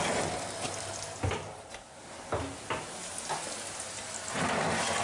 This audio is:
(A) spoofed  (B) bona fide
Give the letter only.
B